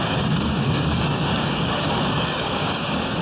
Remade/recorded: remade